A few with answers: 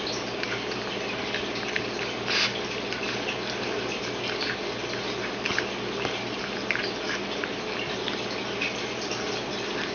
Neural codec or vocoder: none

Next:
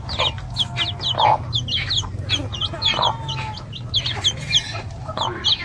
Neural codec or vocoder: none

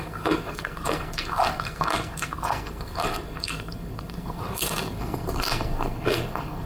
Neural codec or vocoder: codec, SNAC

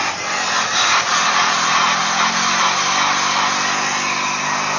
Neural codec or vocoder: none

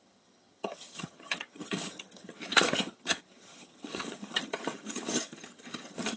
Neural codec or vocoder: vocoder, HiFi-GAN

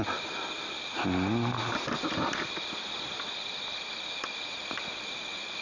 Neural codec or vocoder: none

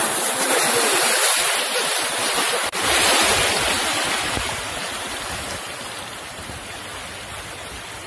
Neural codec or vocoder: none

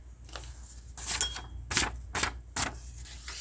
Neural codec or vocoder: none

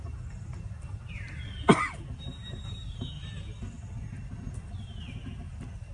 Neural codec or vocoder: none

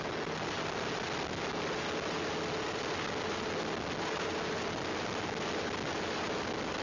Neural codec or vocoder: none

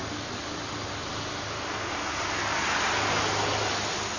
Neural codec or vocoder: none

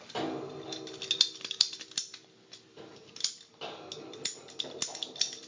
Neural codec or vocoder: none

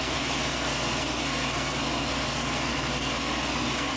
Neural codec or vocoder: codec, SNAC